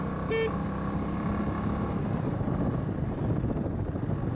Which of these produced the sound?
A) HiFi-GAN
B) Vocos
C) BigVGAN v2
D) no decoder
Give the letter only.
D